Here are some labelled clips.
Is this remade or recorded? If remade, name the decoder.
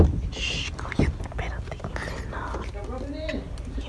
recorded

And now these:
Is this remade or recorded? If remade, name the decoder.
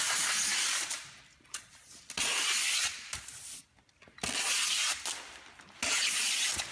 recorded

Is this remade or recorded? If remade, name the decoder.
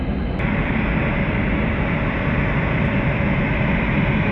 recorded